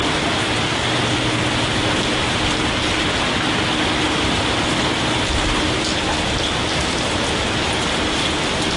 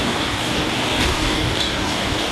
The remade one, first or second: second